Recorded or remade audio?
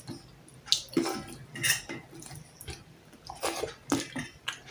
recorded